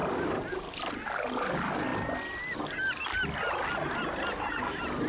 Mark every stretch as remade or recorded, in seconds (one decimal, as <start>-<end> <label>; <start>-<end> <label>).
0.0-5.1 recorded